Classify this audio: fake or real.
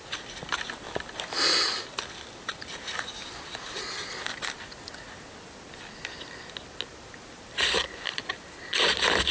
real